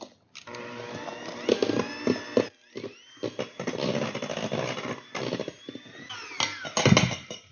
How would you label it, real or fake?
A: real